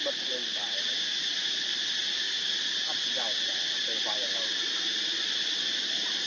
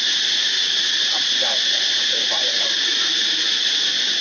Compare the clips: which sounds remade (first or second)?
second